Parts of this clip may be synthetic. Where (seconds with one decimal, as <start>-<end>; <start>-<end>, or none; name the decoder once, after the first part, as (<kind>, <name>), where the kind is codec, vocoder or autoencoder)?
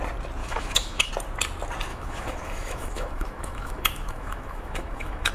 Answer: 0.4-1.1 (autoencoder, DAC-VAE); 1.9-5.3